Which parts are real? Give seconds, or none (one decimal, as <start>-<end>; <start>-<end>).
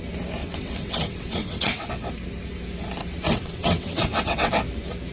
0.0-0.4; 1.9-3.3; 4.5-5.1